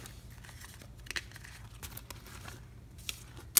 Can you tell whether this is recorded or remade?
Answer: recorded